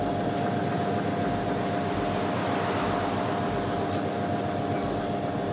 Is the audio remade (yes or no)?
no